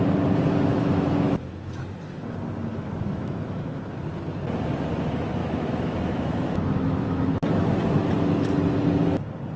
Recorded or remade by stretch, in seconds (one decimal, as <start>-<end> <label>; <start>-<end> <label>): 0.0-0.7 recorded; 0.7-1.8 remade; 1.8-2.7 recorded; 2.7-3.8 remade; 3.8-5.4 recorded; 5.4-8.1 remade; 8.1-9.6 recorded